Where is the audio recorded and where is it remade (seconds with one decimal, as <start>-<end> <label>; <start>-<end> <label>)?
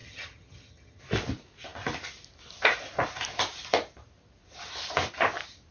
0.0-1.0 remade; 1.0-5.7 recorded